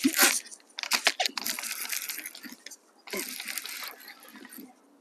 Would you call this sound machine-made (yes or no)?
no